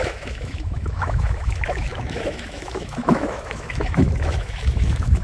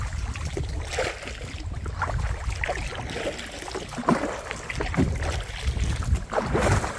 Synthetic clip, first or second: first